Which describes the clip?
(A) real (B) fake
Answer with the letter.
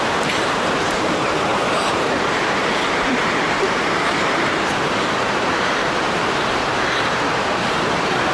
B